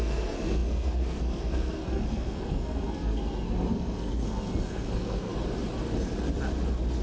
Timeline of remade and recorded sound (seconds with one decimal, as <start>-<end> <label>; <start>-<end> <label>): 0.0-5.3 remade; 5.3-7.0 recorded

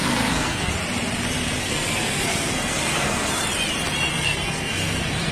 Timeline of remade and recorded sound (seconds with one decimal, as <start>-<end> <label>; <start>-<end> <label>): 0.0-0.7 remade; 0.7-1.6 recorded; 1.6-3.3 remade; 3.3-4.1 recorded; 4.1-5.3 remade

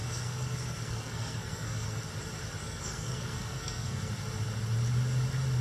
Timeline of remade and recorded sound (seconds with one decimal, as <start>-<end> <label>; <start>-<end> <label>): 0.0-2.0 remade; 2.0-2.6 recorded; 2.6-4.1 remade; 4.1-5.6 recorded

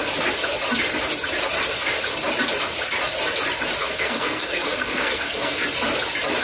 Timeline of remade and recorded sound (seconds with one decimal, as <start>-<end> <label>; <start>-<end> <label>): 0.0-3.8 recorded; 3.8-5.6 remade; 5.6-6.4 recorded